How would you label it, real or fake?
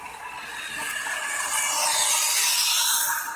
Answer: real